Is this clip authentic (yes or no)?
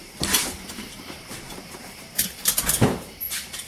no